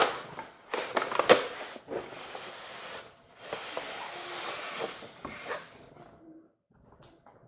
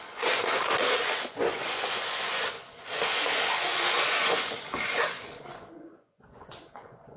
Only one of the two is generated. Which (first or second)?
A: second